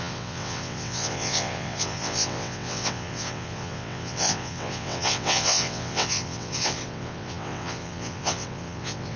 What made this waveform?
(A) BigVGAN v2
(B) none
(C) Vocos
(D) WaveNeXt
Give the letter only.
D